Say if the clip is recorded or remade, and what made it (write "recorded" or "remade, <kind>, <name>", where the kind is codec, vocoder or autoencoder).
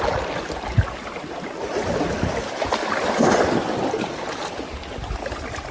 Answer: recorded